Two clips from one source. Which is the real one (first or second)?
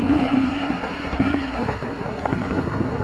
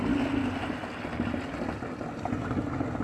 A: second